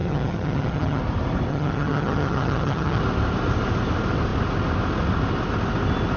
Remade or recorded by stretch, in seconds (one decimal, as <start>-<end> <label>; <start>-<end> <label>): 0.0-1.0 remade; 1.0-1.5 recorded; 1.5-3.0 remade; 3.0-6.2 recorded